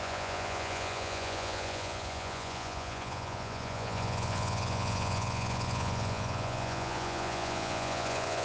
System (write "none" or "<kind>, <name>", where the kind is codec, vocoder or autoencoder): vocoder, Vocos